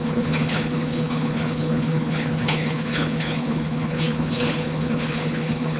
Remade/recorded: remade